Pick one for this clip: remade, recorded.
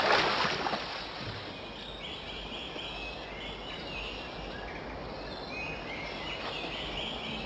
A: recorded